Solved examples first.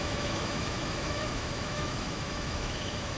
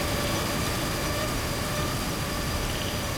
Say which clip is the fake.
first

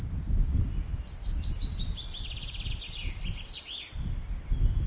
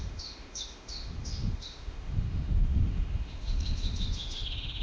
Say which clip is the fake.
second